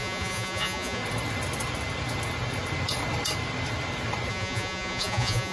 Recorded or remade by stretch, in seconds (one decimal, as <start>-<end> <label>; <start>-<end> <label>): 0.0-1.0 remade; 1.0-4.3 recorded; 4.3-5.5 remade